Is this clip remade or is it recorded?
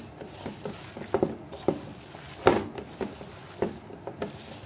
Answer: recorded